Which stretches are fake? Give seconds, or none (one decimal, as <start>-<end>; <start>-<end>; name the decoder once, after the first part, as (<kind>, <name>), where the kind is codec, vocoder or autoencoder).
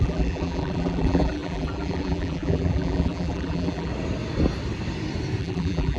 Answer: 0.0-3.9 (vocoder, BigVGAN v2); 5.4-6.0